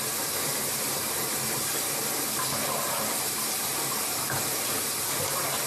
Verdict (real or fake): real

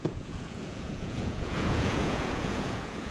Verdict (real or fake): fake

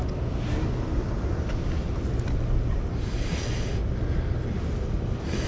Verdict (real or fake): real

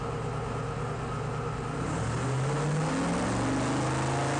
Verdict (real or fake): real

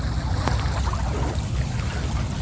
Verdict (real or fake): real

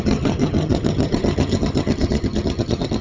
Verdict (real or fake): fake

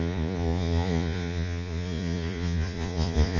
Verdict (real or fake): fake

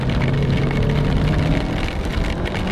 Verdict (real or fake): real